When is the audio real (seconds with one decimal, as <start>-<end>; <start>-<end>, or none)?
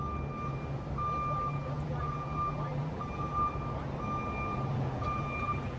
0.0-1.5; 3.5-4.5